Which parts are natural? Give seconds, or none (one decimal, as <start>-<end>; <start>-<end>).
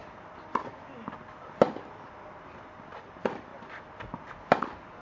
0.0-3.0; 3.5-4.6